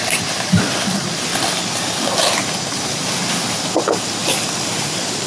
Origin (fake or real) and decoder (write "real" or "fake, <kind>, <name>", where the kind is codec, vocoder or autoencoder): real